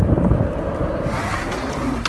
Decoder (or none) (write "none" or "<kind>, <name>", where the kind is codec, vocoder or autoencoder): none